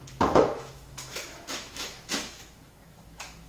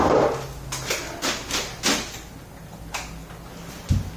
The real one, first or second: second